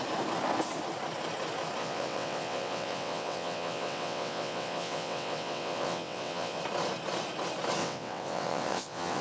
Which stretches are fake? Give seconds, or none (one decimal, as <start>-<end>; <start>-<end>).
1.8-6.6; 7.8-9.2